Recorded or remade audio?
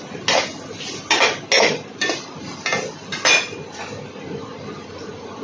recorded